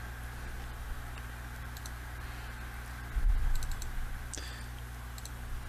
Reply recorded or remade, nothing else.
recorded